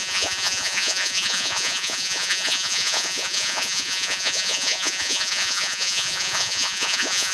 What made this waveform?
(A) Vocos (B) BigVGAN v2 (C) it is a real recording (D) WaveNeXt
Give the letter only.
A